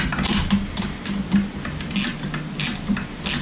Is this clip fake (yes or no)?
no